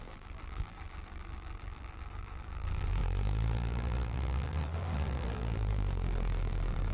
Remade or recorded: remade